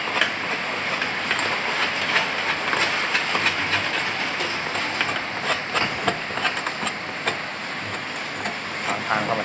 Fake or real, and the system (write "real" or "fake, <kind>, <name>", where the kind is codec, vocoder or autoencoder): real